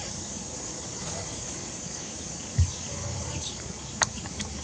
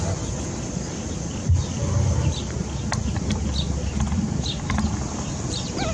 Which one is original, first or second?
second